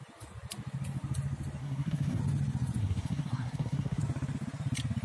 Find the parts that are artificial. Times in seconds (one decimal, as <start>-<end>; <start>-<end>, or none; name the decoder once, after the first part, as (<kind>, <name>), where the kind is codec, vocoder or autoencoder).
1.6-2.2 (codec, SNAC); 2.8-4.0

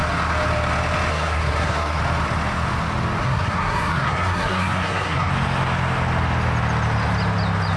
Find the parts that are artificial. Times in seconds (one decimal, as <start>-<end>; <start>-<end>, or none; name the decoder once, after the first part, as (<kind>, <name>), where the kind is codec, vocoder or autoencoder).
1.1-2.0 (codec, SNAC); 3.2-5.3

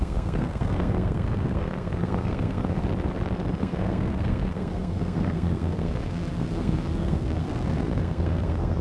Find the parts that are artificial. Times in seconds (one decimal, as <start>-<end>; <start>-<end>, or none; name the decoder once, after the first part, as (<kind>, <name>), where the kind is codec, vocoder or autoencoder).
0.0-2.8 (codec, SNAC); 3.6-8.8

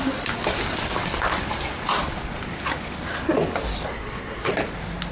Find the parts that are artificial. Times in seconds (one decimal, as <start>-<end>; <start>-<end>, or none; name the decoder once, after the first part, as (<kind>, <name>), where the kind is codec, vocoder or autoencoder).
3.9-4.5 (codec, SNAC)